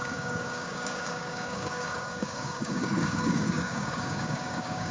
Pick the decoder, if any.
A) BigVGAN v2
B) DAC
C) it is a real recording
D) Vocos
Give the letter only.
B